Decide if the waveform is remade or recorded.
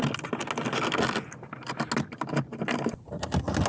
recorded